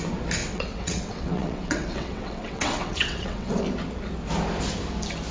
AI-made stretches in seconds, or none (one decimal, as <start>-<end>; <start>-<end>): 0.4-3.6